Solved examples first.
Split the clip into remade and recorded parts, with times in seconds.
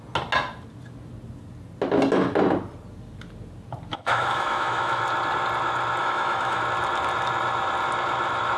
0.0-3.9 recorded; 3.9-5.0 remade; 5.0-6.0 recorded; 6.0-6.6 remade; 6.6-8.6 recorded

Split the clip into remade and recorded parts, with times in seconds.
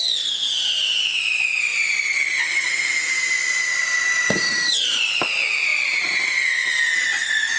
0.0-7.6 recorded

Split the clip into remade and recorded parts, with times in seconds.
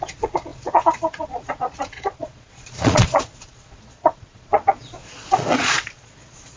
0.0-6.6 remade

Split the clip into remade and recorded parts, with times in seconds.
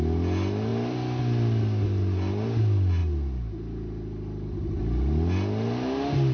0.0-6.3 recorded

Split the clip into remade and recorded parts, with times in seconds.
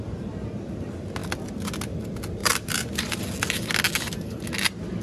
0.0-2.4 recorded; 2.4-3.2 remade; 3.2-5.0 recorded